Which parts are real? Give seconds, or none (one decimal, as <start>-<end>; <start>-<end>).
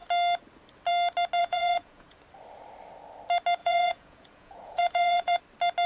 0.0-1.4; 2.2-3.6; 5.4-5.9